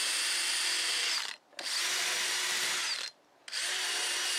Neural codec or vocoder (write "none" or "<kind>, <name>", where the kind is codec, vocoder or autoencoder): none